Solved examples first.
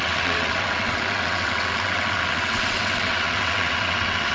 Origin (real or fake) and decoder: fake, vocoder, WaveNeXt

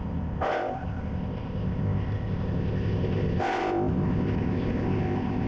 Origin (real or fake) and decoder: fake, codec, ZipCodec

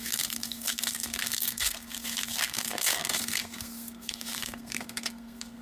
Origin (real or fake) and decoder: fake, codec, SNAC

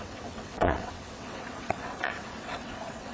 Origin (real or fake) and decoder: fake, vocoder, WaveNeXt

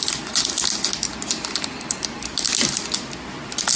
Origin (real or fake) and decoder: real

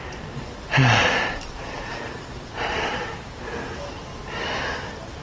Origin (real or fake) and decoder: real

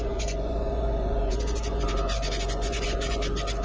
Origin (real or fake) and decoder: fake, vocoder, Vocos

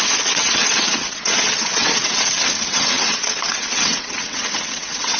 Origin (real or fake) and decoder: fake, vocoder, WaveNeXt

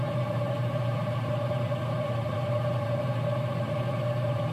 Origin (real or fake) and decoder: fake, vocoder, BigVGAN v2